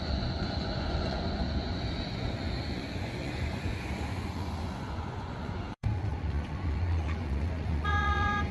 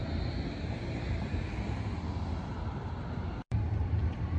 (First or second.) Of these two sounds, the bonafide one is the second